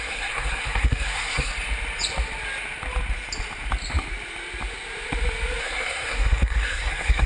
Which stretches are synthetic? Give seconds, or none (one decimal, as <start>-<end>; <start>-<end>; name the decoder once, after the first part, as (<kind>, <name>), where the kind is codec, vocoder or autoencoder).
0.0-1.5 (codec, SNAC); 5.6-7.3